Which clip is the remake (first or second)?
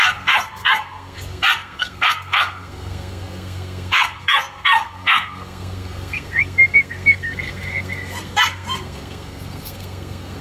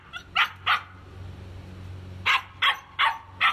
first